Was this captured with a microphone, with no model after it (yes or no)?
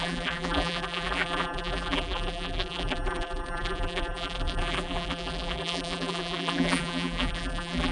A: no